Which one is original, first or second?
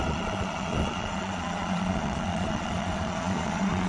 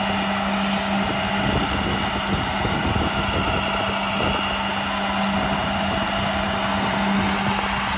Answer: second